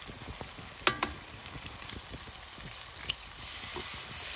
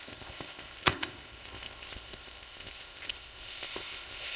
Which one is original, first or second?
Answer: first